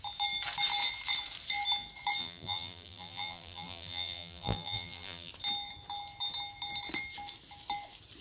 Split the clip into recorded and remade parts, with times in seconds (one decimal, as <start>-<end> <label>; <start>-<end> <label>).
0.0-2.2 recorded; 2.2-5.3 remade; 5.3-8.2 recorded